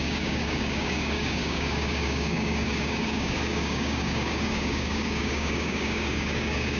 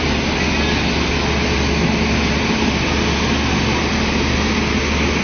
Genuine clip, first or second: second